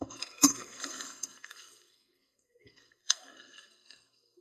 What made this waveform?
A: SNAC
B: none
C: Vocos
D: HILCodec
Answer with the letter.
A